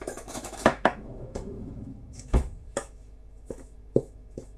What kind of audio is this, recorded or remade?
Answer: remade